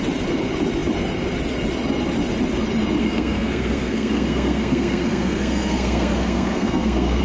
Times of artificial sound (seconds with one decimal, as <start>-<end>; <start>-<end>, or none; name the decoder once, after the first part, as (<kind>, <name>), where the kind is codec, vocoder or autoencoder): 3.0-7.2 (codec, SNAC)